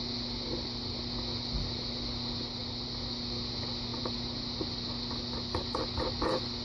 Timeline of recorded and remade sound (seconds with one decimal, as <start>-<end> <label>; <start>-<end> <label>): 0.0-6.6 recorded